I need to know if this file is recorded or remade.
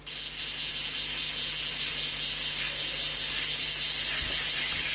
recorded